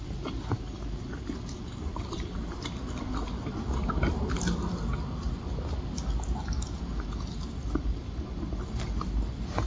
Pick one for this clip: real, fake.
real